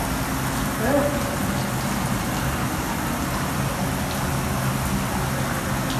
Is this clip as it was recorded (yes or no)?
yes